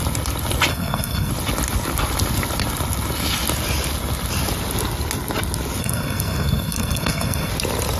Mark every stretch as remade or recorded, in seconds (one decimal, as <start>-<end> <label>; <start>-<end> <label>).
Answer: 0.0-0.7 recorded; 0.7-1.3 remade; 1.3-5.8 recorded; 5.8-7.5 remade; 7.5-8.0 recorded